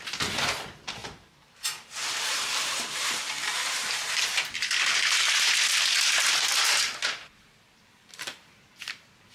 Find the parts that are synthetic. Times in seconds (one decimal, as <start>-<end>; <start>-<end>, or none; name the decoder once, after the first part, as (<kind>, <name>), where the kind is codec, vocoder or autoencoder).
1.0-4.4 (vocoder, BigVGAN v2)